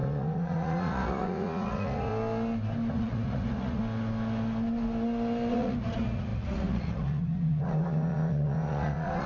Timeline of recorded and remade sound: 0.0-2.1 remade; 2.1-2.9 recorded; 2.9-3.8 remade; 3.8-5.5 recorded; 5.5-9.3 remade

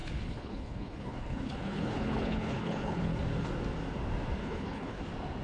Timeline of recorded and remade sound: 0.0-3.2 remade; 3.2-4.4 recorded; 4.4-5.0 remade; 5.0-5.4 recorded

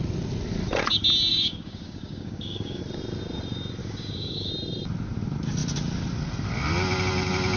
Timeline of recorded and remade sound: 0.0-1.3 recorded; 1.3-2.8 remade; 2.8-3.8 recorded; 3.8-4.5 remade; 4.5-7.6 recorded

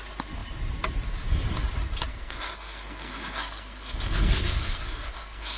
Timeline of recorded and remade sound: 0.0-2.1 recorded; 2.1-5.6 remade

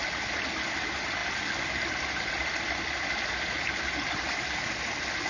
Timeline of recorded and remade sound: 0.0-5.3 recorded